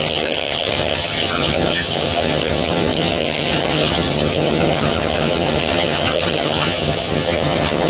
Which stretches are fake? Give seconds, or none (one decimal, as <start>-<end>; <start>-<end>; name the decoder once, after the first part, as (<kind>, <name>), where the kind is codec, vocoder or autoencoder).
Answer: 0.0-7.9 (vocoder, HiFi-GAN)